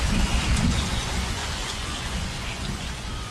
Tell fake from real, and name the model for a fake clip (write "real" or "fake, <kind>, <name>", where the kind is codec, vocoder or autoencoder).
fake, vocoder, Vocos